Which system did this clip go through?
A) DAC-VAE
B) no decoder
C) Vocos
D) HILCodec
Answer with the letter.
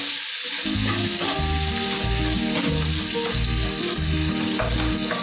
B